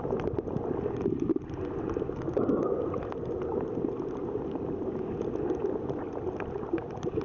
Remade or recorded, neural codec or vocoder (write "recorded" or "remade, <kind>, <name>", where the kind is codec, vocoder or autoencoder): recorded